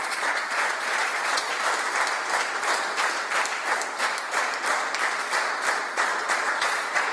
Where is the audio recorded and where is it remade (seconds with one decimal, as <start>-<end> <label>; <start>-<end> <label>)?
0.0-1.5 remade; 1.5-5.8 recorded; 5.8-7.1 remade